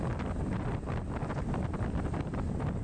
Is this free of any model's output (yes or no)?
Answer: yes